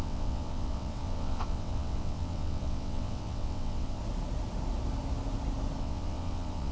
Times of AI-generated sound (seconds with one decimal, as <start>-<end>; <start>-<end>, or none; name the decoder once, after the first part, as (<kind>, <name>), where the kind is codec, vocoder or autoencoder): 0.0-4.0 (vocoder, WaveNeXt); 5.8-6.7

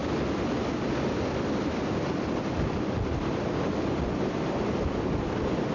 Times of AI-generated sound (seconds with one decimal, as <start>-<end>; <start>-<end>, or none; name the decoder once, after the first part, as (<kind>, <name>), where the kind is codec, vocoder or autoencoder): none

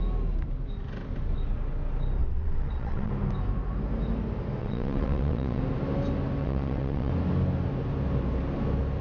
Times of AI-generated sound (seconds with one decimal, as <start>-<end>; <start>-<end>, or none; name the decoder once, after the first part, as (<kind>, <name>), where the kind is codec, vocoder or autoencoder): 2.2-3.1 (vocoder, WaveNeXt); 4.6-5.6; 6.4-7.1

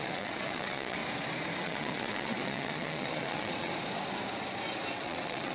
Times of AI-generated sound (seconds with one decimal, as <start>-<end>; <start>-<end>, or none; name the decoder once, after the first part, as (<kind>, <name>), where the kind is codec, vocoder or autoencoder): 0.0-1.0 (vocoder, WaveNeXt); 1.6-3.7; 4.9-5.5

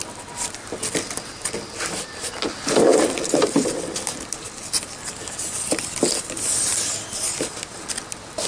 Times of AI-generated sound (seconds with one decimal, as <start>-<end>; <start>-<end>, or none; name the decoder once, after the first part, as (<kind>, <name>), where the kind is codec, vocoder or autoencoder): none

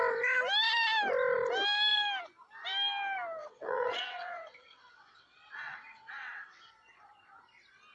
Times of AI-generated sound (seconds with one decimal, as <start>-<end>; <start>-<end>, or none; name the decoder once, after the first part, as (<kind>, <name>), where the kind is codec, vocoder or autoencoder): 3.4-6.7 (vocoder, WaveNeXt)

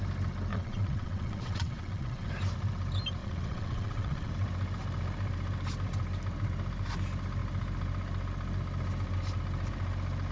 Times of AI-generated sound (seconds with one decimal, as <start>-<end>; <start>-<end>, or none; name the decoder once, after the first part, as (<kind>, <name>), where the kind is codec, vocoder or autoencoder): 0.5-2.3 (vocoder, WaveNeXt); 3.2-4.3

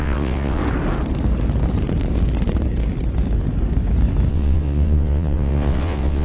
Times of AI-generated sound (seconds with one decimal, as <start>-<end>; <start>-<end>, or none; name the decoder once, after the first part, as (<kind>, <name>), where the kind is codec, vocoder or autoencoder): 0.0-0.6 (vocoder, WaveNeXt); 4.3-6.2